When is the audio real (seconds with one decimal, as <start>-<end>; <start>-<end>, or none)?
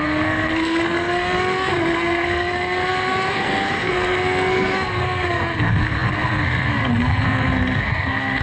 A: none